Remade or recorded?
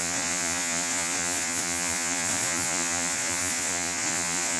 remade